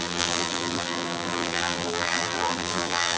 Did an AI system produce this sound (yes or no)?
yes